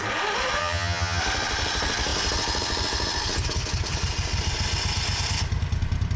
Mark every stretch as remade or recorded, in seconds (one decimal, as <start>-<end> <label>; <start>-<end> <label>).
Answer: 0.0-0.6 recorded; 0.6-1.2 remade; 1.2-6.2 recorded